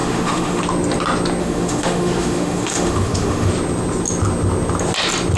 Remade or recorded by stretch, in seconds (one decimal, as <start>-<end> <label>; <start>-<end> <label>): 0.0-0.6 remade; 0.6-1.4 recorded; 1.4-3.5 remade; 3.5-5.4 recorded